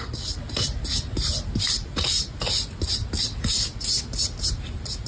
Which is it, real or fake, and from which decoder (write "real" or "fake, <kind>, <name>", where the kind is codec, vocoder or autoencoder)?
real